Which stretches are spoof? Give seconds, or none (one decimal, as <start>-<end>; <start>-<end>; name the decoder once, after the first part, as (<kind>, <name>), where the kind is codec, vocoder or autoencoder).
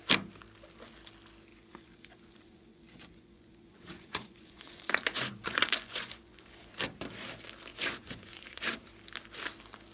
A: 1.5-6.7 (vocoder, Vocos); 7.7-8.6